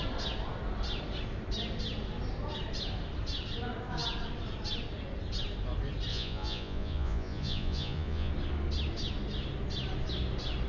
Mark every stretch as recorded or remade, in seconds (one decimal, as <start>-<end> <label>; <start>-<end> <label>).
0.0-6.1 recorded; 6.1-8.3 remade; 8.3-10.7 recorded